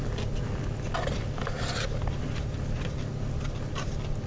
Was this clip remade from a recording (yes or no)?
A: no